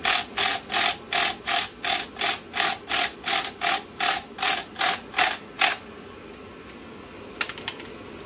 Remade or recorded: recorded